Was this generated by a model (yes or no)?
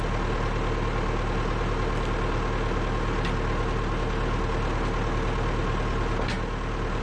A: no